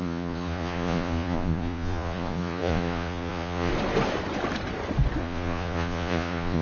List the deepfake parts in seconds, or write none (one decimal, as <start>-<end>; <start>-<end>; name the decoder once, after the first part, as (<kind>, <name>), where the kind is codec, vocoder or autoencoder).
0.0-3.7 (vocoder, Vocos); 5.2-6.6